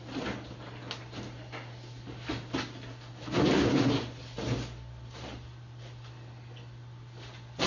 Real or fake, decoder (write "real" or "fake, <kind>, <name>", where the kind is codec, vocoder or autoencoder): real